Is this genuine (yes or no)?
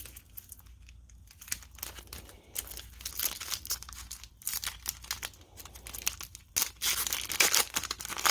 yes